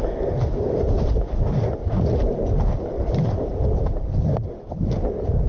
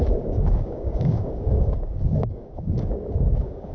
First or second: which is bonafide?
first